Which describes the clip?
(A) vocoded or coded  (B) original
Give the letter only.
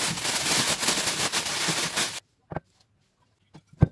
B